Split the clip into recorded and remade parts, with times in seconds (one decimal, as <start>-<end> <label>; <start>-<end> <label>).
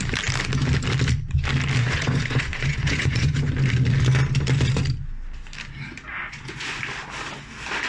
0.0-1.8 recorded; 1.8-3.5 remade; 3.5-6.2 recorded; 6.2-6.8 remade; 6.8-7.9 recorded